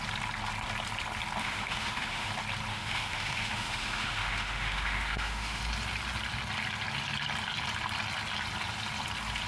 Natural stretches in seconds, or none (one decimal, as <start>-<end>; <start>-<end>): 0.0-1.4; 2.3-2.7; 5.6-9.5